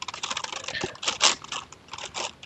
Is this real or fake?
real